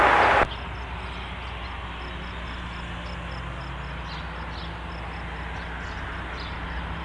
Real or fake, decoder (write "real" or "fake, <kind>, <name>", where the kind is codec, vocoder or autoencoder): real